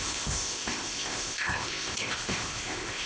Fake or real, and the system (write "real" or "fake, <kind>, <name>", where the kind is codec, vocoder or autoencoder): fake, codec, ZipCodec